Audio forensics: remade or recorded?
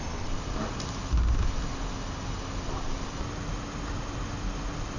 recorded